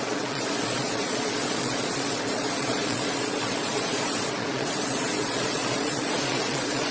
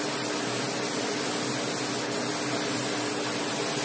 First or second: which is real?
second